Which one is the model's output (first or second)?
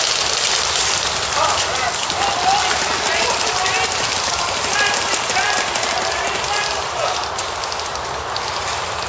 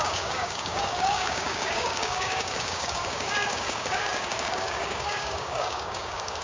second